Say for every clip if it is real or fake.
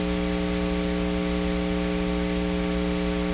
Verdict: real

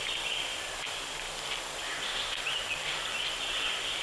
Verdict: real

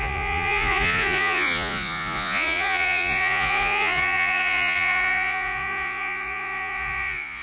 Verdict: fake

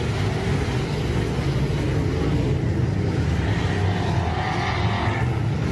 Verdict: real